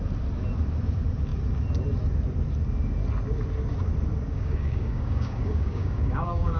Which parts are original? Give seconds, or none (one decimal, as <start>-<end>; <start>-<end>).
0.0-4.3